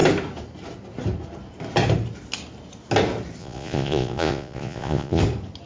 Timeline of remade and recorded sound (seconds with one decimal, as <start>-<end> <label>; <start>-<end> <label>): 0.0-3.4 recorded; 3.4-5.2 remade; 5.2-5.7 recorded